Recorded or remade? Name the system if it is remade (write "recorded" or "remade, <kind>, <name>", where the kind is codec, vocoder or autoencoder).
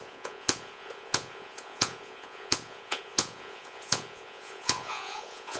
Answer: remade, vocoder, Vocos